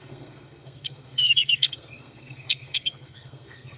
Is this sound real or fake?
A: fake